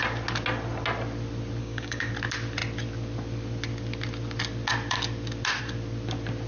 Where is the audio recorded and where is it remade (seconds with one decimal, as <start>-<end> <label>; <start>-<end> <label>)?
0.0-1.6 recorded; 1.6-2.1 remade; 2.1-6.5 recorded